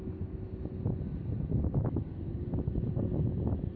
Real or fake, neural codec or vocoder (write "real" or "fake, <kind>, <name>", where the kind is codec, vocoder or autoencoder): real